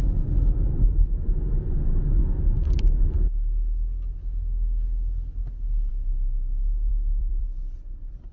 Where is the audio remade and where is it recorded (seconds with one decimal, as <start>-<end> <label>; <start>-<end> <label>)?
0.0-6.9 recorded; 6.9-7.5 remade; 7.5-8.3 recorded